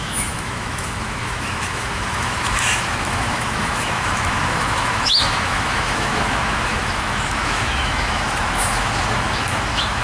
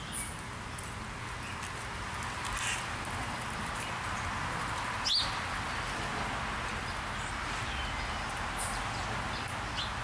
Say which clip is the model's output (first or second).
first